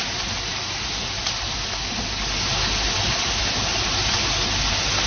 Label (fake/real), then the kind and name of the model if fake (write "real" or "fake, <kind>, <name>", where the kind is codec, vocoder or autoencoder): real